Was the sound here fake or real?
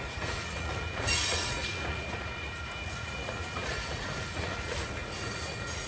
fake